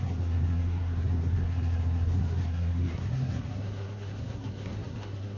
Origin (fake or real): fake